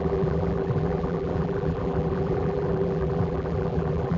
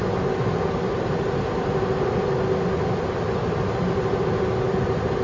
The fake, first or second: first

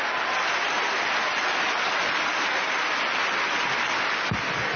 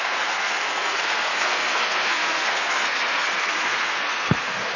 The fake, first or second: second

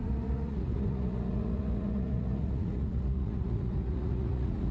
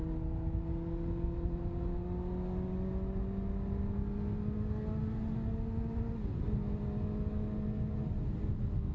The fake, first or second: first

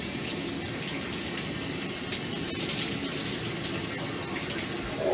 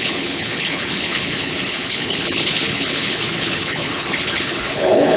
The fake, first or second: second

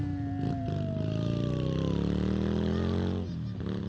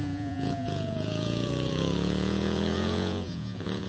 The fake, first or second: second